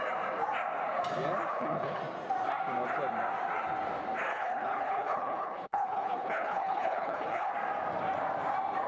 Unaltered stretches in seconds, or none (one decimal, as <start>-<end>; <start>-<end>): 0.0-1.5; 2.0-4.3; 7.5-8.9